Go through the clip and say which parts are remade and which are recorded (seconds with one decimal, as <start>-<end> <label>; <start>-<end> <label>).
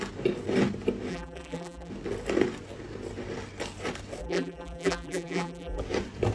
0.0-1.1 recorded; 1.1-1.9 remade; 1.9-4.2 recorded; 4.2-5.8 remade; 5.8-6.3 recorded